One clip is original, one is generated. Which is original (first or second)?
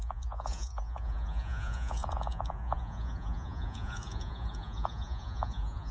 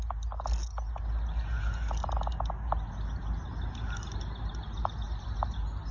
second